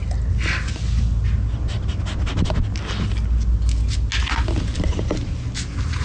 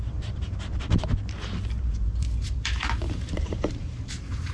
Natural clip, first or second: first